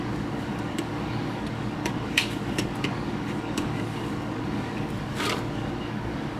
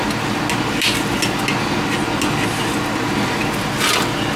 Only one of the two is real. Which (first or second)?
second